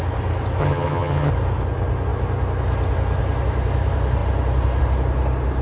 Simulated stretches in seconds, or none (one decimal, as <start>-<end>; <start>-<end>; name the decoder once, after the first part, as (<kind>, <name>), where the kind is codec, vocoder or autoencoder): 0.6-1.3 (vocoder, HiFi-GAN)

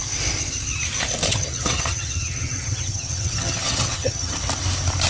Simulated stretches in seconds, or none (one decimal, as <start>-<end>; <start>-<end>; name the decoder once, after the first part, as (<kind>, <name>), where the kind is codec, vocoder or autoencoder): 1.3-4.4 (vocoder, HiFi-GAN)

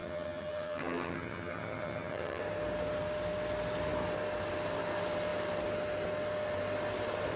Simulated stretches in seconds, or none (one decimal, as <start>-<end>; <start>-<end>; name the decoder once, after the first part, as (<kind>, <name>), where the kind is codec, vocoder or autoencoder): 0.0-2.4 (vocoder, HiFi-GAN)

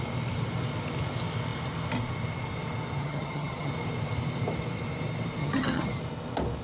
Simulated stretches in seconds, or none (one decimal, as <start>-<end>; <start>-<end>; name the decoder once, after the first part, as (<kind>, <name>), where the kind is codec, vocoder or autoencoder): 3.0-3.7 (vocoder, HiFi-GAN); 5.4-6.0